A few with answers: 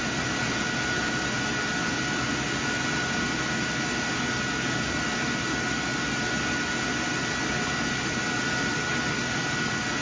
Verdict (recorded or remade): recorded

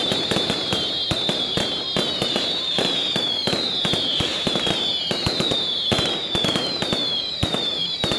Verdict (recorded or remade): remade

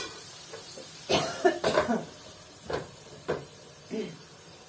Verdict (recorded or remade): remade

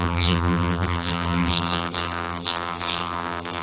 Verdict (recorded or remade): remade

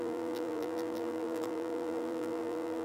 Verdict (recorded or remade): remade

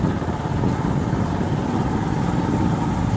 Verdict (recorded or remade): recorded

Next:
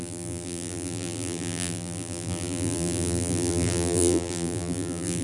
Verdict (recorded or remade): remade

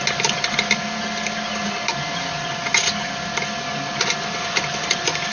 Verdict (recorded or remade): recorded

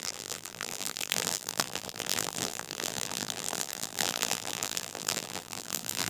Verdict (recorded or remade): remade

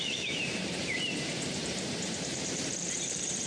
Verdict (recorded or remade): remade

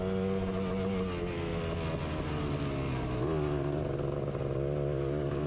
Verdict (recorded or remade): recorded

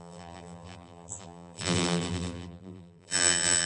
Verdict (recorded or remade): remade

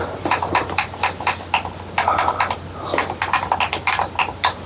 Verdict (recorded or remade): recorded